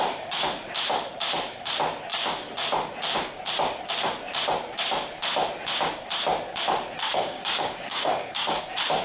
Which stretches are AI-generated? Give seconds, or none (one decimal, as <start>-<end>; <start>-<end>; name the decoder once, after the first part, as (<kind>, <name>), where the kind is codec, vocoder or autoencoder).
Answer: 7.0-8.6 (codec, DAC)